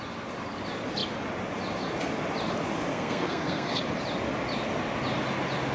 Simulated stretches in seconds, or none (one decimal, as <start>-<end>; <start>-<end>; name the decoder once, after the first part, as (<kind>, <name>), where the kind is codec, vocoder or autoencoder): 2.9-3.8 (codec, SNAC)